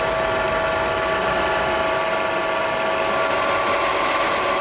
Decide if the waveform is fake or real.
real